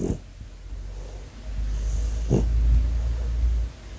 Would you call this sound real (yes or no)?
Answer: yes